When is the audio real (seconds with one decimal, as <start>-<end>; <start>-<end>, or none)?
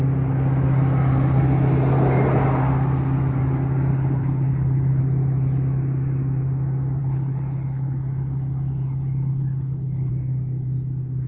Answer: 0.0-3.9; 5.0-7.0; 10.1-11.3